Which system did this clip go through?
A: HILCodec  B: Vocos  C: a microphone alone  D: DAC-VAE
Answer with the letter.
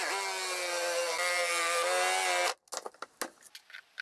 C